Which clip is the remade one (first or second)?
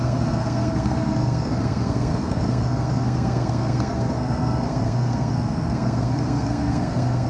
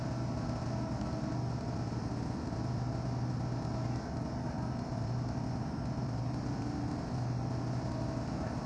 first